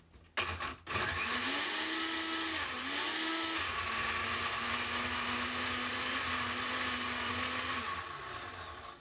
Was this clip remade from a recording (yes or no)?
no